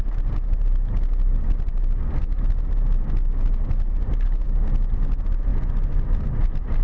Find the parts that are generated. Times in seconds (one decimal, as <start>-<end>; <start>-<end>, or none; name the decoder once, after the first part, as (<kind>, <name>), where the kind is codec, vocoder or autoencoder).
none